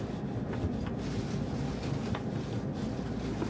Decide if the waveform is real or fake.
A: real